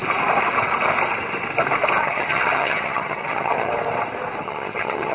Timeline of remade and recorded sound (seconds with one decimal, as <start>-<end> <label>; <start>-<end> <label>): 0.0-2.0 recorded; 2.0-3.7 remade; 3.7-4.4 recorded; 4.4-5.1 remade